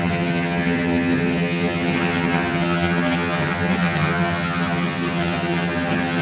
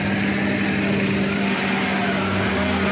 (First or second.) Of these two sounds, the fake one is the first